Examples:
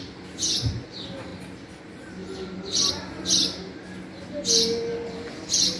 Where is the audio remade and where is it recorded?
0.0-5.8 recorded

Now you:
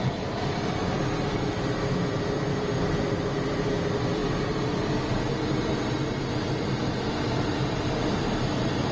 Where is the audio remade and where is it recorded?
0.0-8.9 recorded